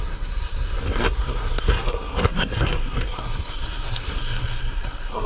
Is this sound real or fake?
fake